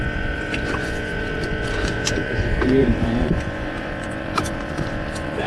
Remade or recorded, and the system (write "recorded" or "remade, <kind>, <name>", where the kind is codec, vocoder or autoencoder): remade, vocoder, Vocos